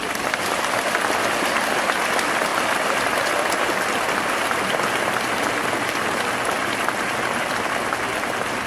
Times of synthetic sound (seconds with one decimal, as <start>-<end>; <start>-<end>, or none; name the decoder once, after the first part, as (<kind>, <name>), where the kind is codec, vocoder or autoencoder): none